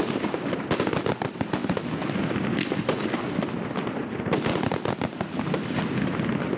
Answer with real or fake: real